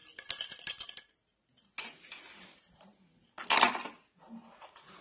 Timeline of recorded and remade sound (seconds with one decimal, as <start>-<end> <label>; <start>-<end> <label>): 0.0-1.8 recorded; 1.8-2.9 remade; 2.9-3.7 recorded; 3.7-5.0 remade